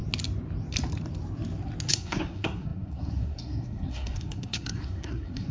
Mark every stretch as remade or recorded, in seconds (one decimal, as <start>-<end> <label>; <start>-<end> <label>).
0.0-1.9 recorded; 1.9-5.5 remade